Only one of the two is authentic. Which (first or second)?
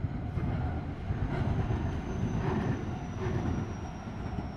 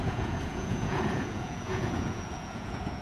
first